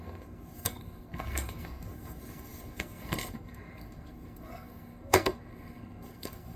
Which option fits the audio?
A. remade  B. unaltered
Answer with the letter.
A